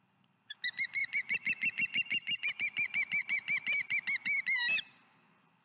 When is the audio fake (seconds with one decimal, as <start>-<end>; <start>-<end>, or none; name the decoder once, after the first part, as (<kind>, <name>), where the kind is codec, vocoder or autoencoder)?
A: none

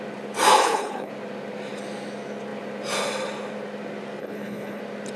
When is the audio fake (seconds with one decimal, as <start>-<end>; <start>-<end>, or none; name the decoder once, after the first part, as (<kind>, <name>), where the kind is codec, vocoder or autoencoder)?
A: 0.5-1.1 (codec, HILCodec); 4.2-4.8